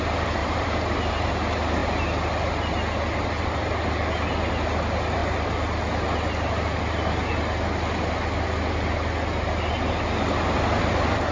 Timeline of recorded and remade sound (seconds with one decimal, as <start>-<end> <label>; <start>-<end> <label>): 0.0-0.4 recorded; 0.4-1.2 remade; 1.2-11.3 recorded

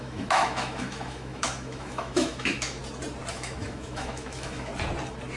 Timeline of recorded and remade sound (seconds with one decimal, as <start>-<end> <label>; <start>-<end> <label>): 0.0-2.8 remade; 2.8-3.3 recorded; 3.3-4.7 remade; 4.7-5.4 recorded

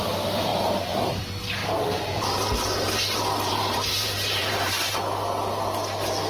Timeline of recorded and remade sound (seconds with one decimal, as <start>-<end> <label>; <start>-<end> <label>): 0.0-0.5 recorded; 0.5-1.2 remade; 1.2-1.6 recorded; 1.6-5.0 remade; 5.0-6.3 recorded

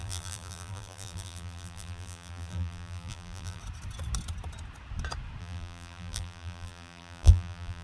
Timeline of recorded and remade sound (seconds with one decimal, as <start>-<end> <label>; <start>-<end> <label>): 0.0-3.6 remade; 3.6-5.4 recorded; 5.4-7.8 remade